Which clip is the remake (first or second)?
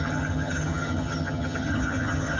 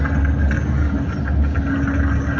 first